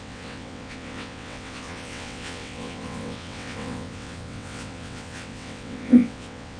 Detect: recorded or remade remade